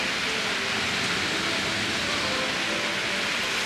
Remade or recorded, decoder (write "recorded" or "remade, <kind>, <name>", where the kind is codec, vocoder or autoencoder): recorded